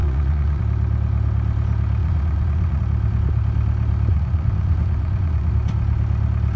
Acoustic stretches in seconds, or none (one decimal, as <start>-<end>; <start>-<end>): 0.6-2.0; 2.8-4.1; 5.5-6.6